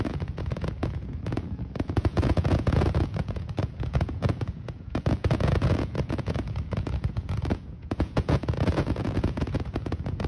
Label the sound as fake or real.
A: fake